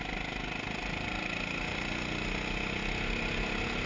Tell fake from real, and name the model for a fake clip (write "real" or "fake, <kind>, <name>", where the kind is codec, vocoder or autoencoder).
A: real